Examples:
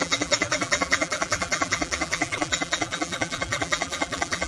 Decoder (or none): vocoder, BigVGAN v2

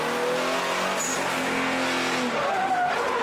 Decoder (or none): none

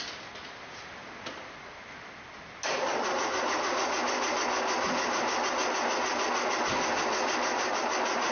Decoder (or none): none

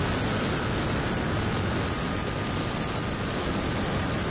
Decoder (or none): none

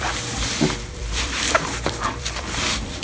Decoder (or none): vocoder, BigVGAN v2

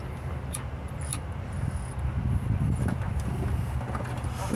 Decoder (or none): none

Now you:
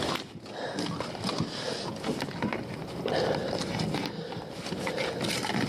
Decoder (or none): none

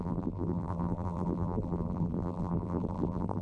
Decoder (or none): vocoder, BigVGAN v2